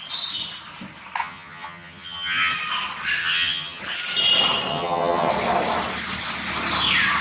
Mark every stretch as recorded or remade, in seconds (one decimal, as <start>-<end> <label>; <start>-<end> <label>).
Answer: 0.0-1.2 recorded; 1.2-2.5 remade; 2.5-3.2 recorded; 3.2-3.8 remade; 3.8-4.7 recorded; 4.7-5.3 remade; 5.3-7.2 recorded